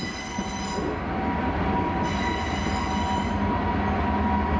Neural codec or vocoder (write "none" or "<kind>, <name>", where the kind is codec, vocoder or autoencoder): none